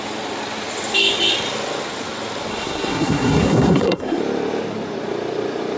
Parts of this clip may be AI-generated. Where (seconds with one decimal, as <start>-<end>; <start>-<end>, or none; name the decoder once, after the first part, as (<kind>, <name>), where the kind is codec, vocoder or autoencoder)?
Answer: 2.5-4.2 (codec, SNAC)